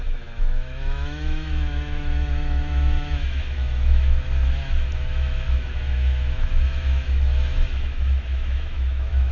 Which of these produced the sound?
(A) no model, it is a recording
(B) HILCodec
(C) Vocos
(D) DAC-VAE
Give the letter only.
D